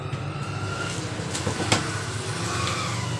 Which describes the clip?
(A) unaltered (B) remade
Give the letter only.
A